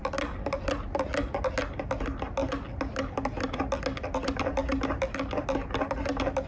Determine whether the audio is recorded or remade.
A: recorded